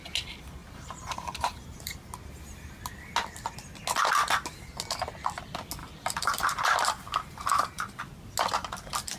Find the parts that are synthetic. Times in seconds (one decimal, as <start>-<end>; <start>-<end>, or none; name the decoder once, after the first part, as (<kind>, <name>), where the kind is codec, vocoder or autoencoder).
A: 0.6-2.1 (vocoder, BigVGAN v2); 5.8-8.0